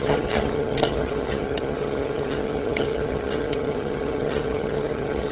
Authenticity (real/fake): fake